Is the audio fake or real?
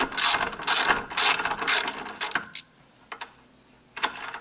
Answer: real